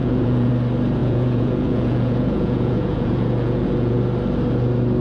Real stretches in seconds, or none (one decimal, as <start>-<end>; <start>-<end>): 0.5-1.0; 4.0-5.0